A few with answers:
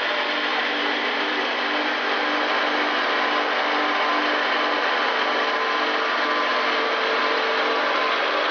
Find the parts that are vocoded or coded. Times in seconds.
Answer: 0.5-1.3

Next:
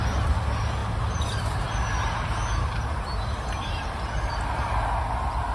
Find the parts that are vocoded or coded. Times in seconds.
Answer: none

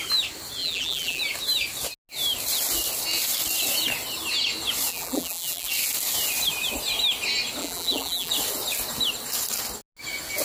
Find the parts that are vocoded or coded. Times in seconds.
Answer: 0.6-1.2; 4.9-5.7; 7.6-8.3